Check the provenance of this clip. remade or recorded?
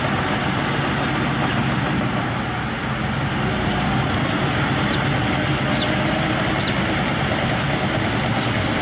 recorded